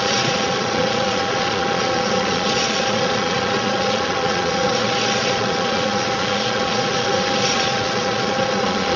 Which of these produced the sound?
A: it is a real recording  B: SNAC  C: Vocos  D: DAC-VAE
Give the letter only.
C